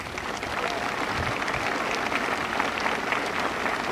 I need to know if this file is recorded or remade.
recorded